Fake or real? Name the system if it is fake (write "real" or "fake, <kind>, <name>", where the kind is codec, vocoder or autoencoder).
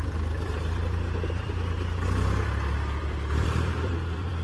fake, vocoder, BigVGAN v2